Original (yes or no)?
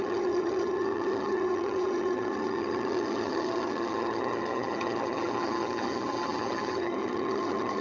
no